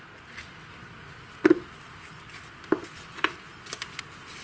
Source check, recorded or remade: recorded